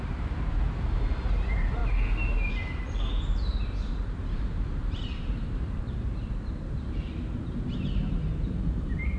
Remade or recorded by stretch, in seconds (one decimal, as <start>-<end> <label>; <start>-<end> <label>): 0.0-1.8 remade; 1.8-2.5 recorded; 2.5-9.2 remade